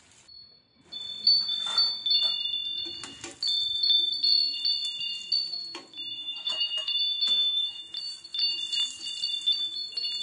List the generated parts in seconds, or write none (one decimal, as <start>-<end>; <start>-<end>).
6.1-7.8